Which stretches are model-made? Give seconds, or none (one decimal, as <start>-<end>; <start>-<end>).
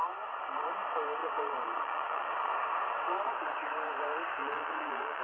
1.2-2.5; 4.4-5.2